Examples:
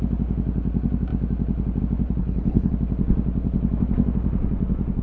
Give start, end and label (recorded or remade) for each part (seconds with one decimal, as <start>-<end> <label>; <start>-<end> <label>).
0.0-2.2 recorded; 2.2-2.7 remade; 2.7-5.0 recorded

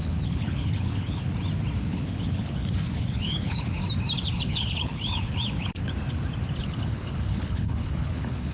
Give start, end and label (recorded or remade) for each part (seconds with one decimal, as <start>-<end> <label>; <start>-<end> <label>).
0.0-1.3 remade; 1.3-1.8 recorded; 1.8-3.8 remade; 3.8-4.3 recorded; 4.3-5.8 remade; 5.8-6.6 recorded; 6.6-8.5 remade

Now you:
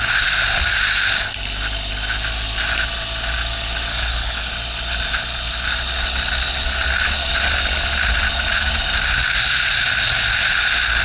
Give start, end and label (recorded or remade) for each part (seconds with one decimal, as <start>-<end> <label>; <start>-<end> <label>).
0.0-3.9 recorded; 3.9-4.5 remade; 4.5-11.0 recorded

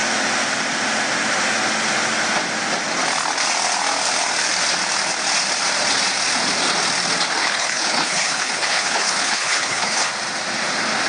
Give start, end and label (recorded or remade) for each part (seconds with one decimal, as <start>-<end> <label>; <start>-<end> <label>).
0.0-7.4 recorded; 7.4-10.1 remade; 10.1-11.1 recorded

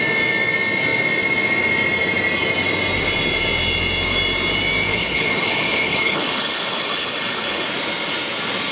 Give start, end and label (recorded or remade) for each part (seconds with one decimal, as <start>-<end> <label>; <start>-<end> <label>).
0.0-4.9 recorded; 4.9-7.7 remade; 7.7-8.7 recorded

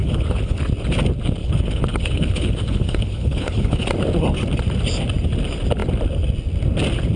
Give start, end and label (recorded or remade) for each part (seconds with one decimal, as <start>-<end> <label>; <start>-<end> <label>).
0.0-0.6 remade; 0.6-1.4 recorded; 1.4-3.9 remade; 3.9-7.2 recorded

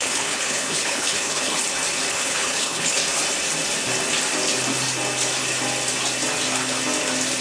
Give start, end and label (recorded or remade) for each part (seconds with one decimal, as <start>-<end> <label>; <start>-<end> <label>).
0.0-1.5 remade; 1.5-2.1 recorded; 2.1-3.0 remade; 3.0-7.4 recorded

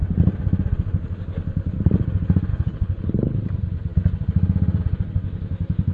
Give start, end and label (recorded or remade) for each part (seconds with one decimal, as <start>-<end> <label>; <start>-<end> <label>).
0.0-2.5 recorded; 2.5-3.4 remade; 3.4-5.9 recorded